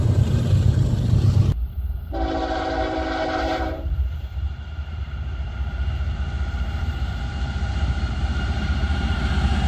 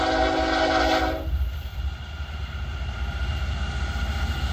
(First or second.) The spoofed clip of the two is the first